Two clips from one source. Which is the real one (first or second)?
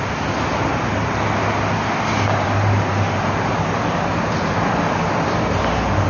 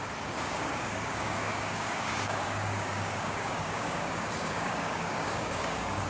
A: first